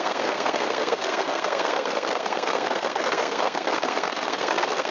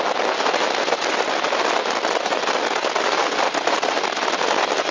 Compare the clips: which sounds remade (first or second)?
first